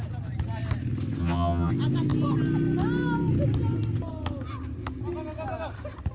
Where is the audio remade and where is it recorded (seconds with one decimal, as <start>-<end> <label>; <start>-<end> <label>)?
0.0-1.2 recorded; 1.2-1.7 remade; 1.7-6.1 recorded